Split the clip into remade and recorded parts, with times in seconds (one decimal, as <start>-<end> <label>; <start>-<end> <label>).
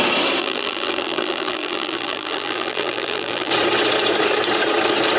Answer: 0.0-0.4 recorded; 0.4-3.5 remade; 3.5-5.2 recorded